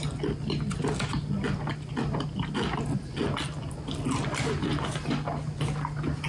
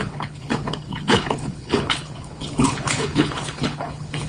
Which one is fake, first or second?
second